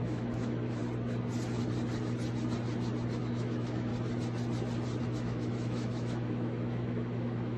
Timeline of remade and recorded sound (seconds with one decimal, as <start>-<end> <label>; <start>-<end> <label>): 0.0-0.8 remade; 0.8-3.2 recorded; 3.2-3.9 remade; 3.9-5.0 recorded; 5.0-7.6 remade